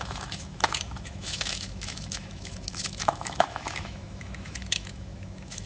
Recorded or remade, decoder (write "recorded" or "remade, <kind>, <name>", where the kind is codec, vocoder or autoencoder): remade, autoencoder, DAC-VAE